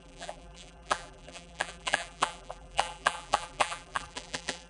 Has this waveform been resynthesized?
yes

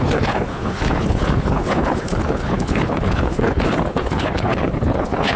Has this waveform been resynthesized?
yes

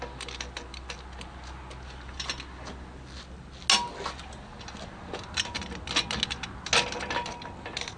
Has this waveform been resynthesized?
no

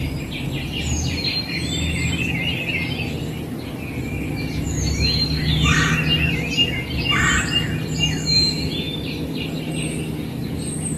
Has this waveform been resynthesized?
no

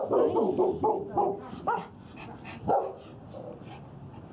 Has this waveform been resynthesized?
no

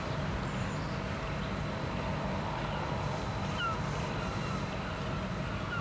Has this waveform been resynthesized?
no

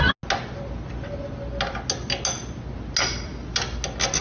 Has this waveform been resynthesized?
no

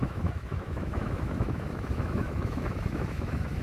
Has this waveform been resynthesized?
yes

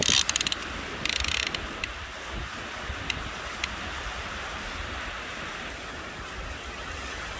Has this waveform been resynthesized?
no